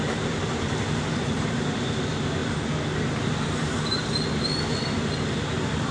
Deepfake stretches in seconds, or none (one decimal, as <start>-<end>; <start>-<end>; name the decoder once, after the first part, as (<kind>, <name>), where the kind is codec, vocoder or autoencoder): 0.0-2.4 (vocoder, BigVGAN v2)